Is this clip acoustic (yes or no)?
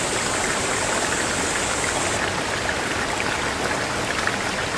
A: yes